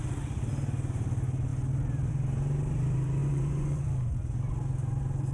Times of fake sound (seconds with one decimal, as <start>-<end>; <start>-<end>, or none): 3.2-3.8